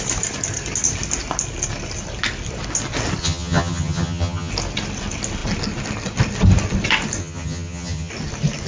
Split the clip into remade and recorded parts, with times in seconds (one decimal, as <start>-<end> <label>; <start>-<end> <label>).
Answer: 0.0-3.2 recorded; 3.2-4.5 remade; 4.5-7.2 recorded; 7.2-8.1 remade; 8.1-8.7 recorded